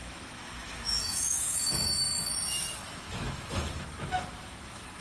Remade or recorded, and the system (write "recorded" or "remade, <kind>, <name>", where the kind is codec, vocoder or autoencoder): remade, autoencoder, DAC-VAE